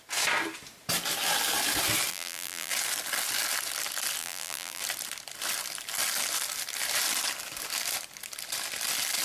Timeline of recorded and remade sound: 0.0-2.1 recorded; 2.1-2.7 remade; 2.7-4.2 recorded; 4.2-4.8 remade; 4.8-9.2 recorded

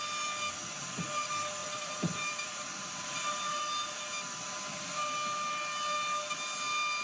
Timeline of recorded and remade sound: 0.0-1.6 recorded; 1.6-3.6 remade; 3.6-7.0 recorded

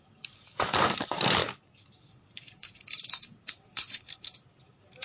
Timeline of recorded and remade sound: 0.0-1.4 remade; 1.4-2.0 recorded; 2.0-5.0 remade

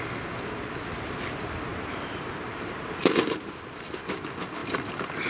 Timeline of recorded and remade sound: 0.0-1.7 recorded; 1.7-3.6 remade; 3.6-5.3 recorded